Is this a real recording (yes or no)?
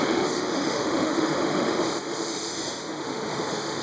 no